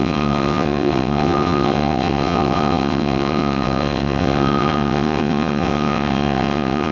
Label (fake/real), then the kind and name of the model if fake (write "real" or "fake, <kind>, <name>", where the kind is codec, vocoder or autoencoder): fake, vocoder, WaveNeXt